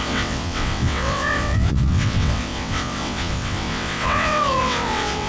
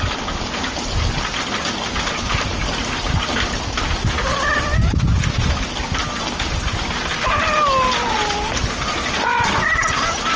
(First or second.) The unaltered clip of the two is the second